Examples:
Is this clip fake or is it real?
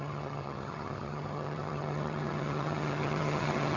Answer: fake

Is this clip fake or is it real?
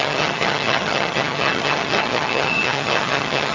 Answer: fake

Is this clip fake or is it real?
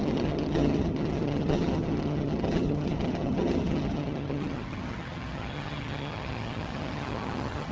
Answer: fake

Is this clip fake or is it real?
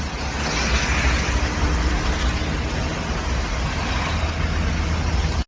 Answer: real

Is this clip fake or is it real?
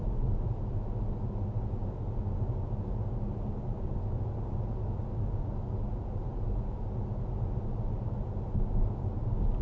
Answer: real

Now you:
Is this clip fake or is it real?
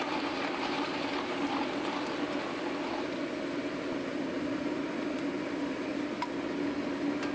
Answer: real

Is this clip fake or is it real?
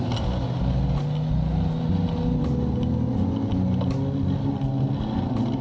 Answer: real